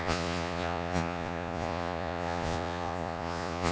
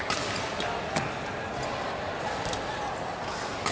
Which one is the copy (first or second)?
first